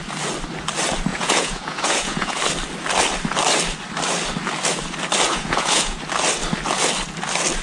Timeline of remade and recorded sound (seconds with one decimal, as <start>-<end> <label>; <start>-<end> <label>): 0.0-1.1 recorded; 1.1-2.4 remade; 2.4-5.3 recorded; 5.3-6.0 remade; 6.0-7.6 recorded